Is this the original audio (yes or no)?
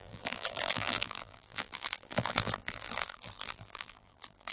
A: no